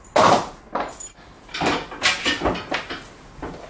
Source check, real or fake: real